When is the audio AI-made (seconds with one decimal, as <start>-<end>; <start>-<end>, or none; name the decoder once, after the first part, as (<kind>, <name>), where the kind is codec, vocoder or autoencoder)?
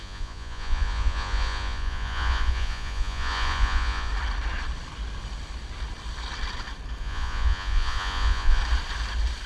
0.0-4.1 (vocoder, Vocos); 7.0-8.6